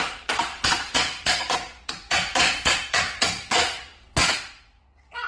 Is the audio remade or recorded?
remade